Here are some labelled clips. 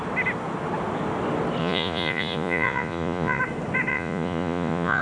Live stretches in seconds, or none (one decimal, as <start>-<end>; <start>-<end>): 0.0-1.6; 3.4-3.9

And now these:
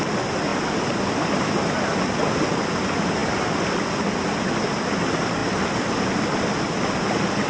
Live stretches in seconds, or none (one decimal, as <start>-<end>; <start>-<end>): 0.0-5.4; 6.0-7.5

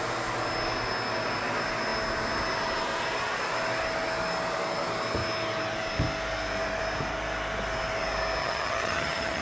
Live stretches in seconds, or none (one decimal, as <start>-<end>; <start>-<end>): 0.0-8.4

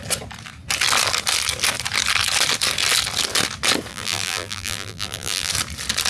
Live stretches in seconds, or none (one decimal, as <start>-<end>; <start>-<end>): 0.0-3.9; 5.5-6.1

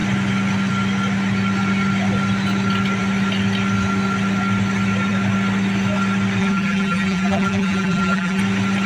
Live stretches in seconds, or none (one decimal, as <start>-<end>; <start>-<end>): 0.0-6.4; 8.4-8.9

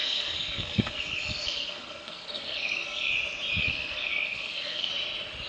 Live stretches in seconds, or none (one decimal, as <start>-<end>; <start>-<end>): 3.1-3.6; 4.9-5.5